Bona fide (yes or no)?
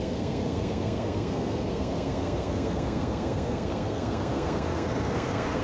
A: no